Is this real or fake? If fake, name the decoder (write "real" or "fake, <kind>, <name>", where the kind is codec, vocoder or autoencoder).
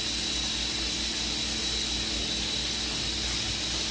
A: real